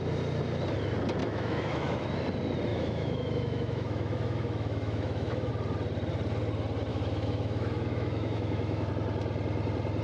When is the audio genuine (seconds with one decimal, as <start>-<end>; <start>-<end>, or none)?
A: 0.0-1.2; 2.1-2.7; 5.5-6.9; 8.9-10.0